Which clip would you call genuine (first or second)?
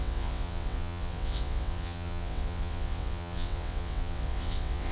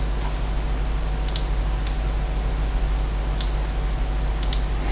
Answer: second